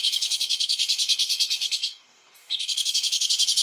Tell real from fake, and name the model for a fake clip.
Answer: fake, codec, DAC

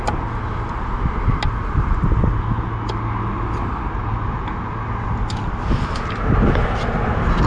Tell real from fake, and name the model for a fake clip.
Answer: real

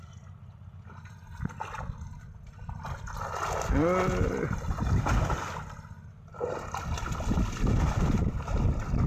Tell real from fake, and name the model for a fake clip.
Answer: real